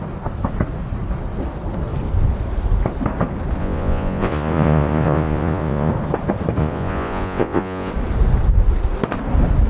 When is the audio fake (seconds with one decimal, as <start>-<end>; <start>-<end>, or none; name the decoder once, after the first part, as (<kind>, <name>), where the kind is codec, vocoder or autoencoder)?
3.6-5.9 (vocoder, Vocos); 6.6-7.9